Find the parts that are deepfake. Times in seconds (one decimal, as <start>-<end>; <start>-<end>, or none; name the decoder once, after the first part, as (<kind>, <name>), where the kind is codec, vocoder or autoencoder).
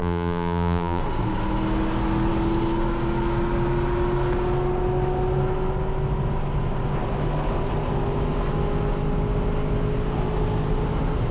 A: 0.0-1.0 (vocoder, BigVGAN v2)